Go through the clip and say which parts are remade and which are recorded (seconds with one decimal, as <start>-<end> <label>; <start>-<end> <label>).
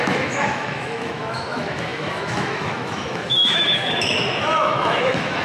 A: 0.0-5.4 remade